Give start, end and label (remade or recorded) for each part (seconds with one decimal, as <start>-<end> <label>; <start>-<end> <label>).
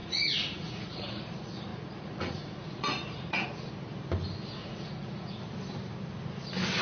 0.0-1.2 remade; 1.2-1.7 recorded; 1.7-3.7 remade; 3.7-4.6 recorded; 4.6-5.4 remade; 5.4-6.8 recorded